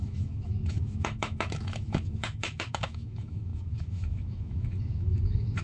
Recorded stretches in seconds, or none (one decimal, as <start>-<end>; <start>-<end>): none